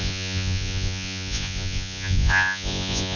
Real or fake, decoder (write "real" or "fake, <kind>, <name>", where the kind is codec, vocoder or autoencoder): fake, vocoder, Vocos